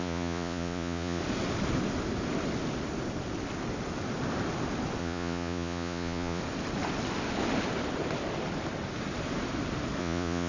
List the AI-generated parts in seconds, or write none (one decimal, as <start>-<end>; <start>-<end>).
0.0-1.2; 5.0-6.4; 10.0-10.5

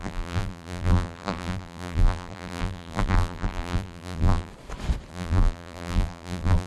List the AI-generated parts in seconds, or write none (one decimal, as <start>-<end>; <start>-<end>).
0.0-4.5; 5.1-6.7